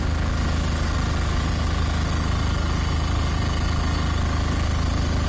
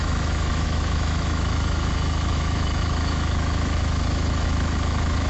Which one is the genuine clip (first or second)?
first